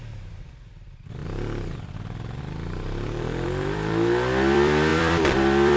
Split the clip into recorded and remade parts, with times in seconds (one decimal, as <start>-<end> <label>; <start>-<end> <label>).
0.0-1.2 remade; 1.2-2.4 recorded; 2.4-5.8 remade